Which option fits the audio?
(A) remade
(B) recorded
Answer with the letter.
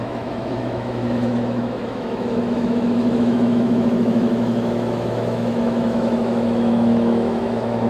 A